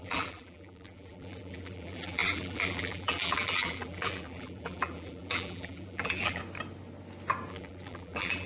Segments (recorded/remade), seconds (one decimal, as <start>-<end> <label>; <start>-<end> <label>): 0.0-6.4 remade; 6.4-7.5 recorded; 7.5-8.5 remade